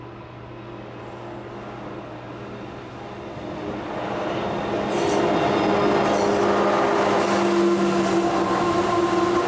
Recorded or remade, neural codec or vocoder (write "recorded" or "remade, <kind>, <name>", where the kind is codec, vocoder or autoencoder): recorded